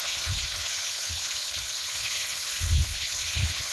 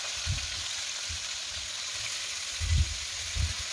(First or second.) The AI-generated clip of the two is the first